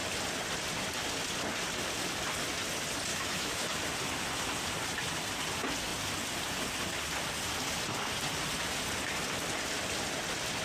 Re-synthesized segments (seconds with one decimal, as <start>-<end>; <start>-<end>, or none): 3.1-3.8